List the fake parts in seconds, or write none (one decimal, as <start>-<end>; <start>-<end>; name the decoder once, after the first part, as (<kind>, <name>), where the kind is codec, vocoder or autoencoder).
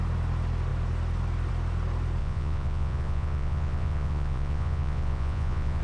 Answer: 2.2-5.8 (vocoder, Vocos)